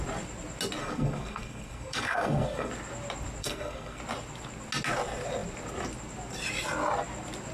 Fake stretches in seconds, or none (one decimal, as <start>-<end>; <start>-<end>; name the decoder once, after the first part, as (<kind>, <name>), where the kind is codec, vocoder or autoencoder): 0.8-2.7 (codec, SNAC); 3.4-4.0